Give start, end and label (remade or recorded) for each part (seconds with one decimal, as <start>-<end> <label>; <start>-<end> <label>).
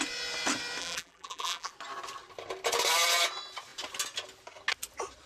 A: 0.0-0.8 recorded; 0.8-1.7 remade; 1.7-5.3 recorded